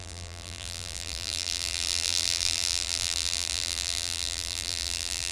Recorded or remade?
remade